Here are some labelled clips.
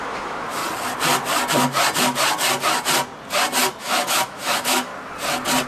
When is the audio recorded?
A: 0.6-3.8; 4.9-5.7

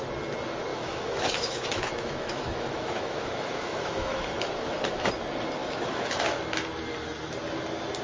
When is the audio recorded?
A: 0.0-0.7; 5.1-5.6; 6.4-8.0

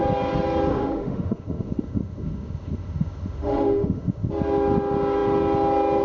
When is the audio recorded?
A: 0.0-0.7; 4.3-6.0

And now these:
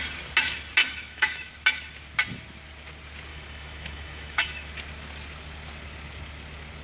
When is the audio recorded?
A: 0.0-0.8; 1.5-3.3; 4.7-6.8

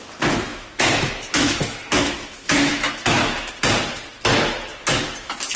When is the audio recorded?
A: 0.0-0.5; 3.5-5.6

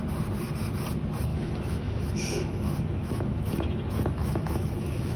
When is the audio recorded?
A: 0.0-1.3; 3.5-4.2

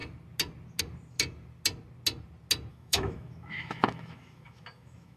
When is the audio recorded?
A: 0.0-2.7

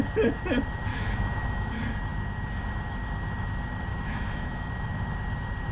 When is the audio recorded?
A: 0.0-0.9; 1.7-3.9; 4.7-5.7